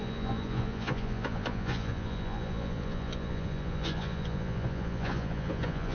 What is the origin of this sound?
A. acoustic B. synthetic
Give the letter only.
B